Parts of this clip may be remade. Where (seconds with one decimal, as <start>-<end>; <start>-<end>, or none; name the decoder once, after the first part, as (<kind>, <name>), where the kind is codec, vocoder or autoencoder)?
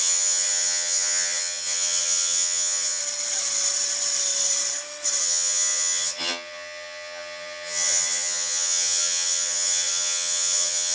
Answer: 0.0-3.0 (vocoder, HiFi-GAN); 5.2-10.9